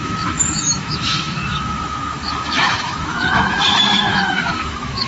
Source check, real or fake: fake